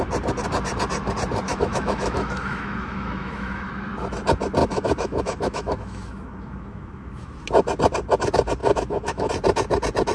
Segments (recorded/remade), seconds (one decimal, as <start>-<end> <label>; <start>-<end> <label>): 0.0-1.5 recorded; 1.5-3.7 remade; 3.7-4.6 recorded; 4.6-7.3 remade; 7.3-8.6 recorded; 8.6-9.3 remade; 9.3-10.1 recorded